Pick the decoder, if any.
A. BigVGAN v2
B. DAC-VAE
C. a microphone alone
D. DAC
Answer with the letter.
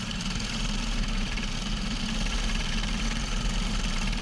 A